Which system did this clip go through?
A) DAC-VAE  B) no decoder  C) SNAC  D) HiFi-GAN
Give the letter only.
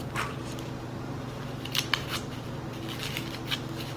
B